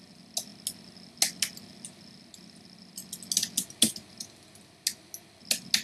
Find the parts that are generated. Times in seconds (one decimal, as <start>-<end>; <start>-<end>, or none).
none